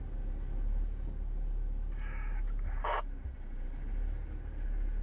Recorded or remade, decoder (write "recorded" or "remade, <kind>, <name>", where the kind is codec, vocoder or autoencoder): recorded